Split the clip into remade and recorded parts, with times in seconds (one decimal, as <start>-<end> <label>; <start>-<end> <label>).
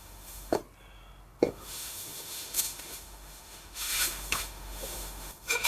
0.0-0.6 remade; 0.6-1.4 recorded; 1.4-5.7 remade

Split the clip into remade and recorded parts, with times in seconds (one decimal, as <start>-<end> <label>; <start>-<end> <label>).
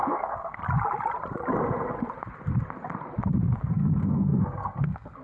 0.0-0.6 remade; 0.6-3.7 recorded; 3.7-5.2 remade